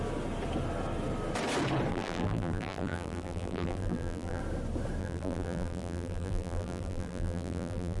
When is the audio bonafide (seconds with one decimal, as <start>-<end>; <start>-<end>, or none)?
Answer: 0.0-1.9; 4.4-5.0